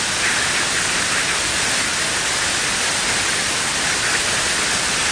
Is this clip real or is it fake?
real